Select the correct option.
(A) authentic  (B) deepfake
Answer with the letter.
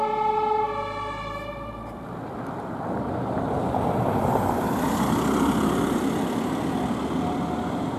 A